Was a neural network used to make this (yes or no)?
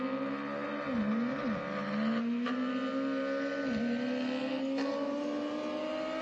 no